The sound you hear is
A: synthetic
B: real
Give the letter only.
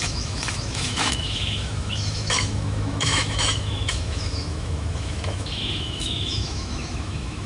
A